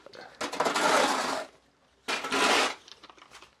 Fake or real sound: real